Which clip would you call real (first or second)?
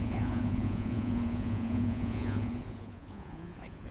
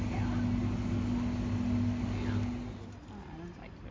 second